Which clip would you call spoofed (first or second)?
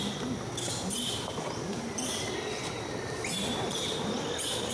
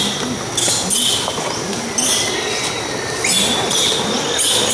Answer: first